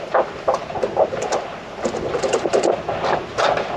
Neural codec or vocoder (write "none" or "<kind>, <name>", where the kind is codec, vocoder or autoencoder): none